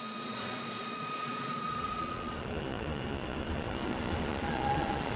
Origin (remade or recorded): remade